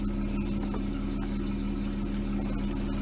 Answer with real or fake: real